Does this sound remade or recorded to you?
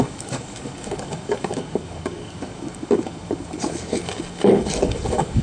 remade